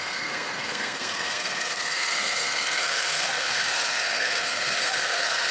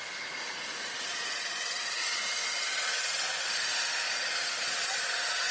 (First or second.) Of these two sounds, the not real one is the first